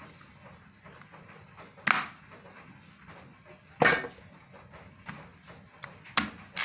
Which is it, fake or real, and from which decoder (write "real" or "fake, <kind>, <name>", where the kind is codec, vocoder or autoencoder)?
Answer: real